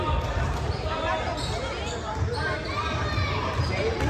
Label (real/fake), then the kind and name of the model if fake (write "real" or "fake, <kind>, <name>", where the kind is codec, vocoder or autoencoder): real